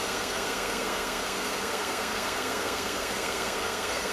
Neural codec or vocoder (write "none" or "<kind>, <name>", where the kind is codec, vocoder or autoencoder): codec, SNAC